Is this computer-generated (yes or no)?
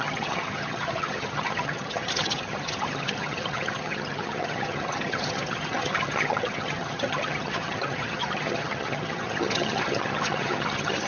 yes